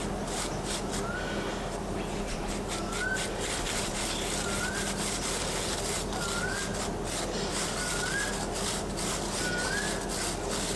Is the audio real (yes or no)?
yes